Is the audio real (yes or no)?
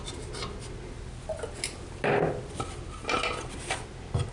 yes